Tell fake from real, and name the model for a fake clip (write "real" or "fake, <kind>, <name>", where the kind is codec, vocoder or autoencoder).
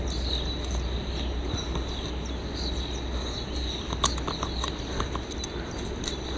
real